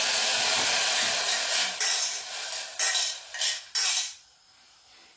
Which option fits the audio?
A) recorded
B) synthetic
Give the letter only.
A